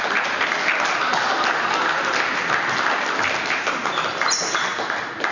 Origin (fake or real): real